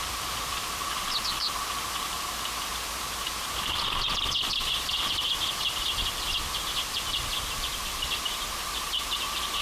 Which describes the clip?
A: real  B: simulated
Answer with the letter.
B